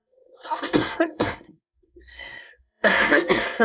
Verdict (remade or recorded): remade